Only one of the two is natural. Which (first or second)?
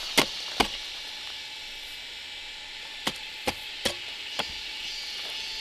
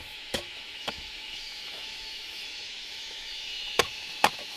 first